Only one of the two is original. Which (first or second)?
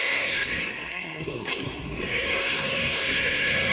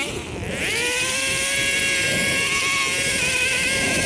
second